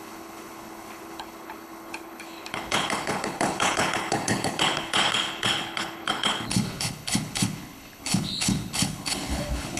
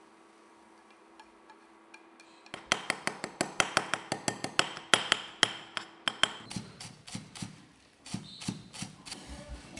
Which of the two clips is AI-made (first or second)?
first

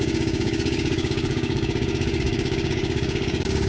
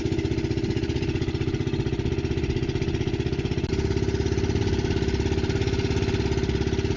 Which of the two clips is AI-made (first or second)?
first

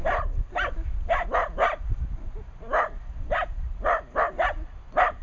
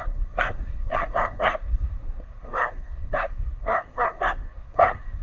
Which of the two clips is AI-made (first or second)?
second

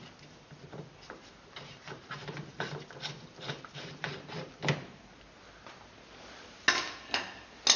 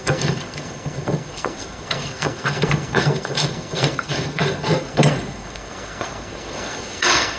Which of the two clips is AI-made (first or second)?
second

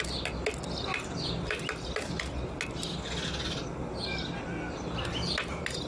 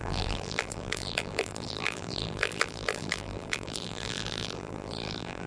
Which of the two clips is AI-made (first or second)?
second